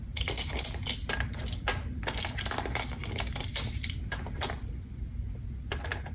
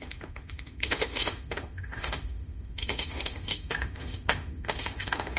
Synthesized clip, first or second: second